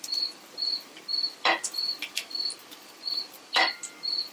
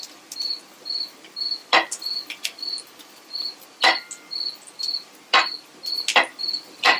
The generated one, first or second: first